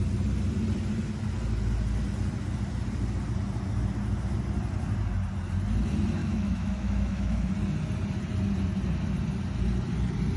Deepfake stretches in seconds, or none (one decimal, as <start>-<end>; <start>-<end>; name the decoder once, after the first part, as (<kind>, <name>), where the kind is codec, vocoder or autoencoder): 6.2-7.5 (autoencoder, DAC-VAE)